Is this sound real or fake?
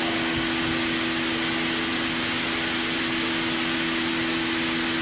real